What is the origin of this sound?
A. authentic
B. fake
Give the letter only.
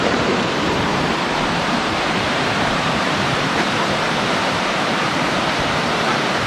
B